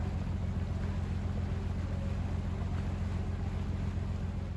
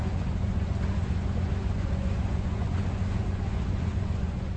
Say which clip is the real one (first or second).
first